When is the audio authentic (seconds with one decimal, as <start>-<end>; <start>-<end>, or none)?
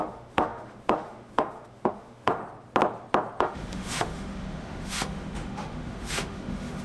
2.4-3.4